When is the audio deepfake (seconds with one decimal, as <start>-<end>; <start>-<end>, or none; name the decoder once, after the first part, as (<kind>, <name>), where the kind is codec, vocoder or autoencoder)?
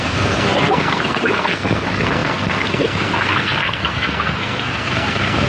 0.0-5.5 (codec, SNAC)